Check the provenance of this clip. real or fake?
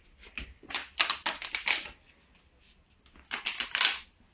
real